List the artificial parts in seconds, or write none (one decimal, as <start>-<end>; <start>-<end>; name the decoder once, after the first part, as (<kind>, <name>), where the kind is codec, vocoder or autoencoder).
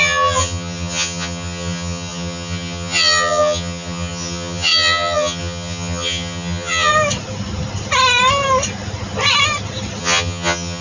0.0-6.9 (vocoder, HiFi-GAN); 10.0-10.8